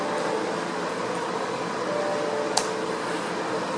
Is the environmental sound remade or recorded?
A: recorded